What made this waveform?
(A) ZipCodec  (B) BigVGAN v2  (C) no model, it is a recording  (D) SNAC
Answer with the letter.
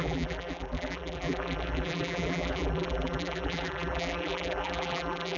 B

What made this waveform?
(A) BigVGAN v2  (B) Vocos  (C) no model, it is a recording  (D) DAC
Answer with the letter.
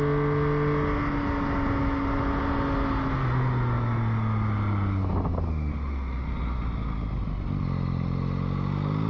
C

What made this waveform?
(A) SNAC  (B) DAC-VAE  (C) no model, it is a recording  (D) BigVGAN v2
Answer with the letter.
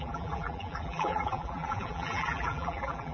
D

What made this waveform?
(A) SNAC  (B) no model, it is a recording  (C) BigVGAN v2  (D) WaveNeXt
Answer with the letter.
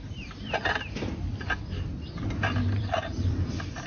C